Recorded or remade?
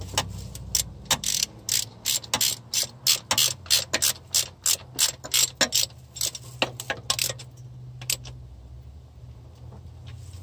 recorded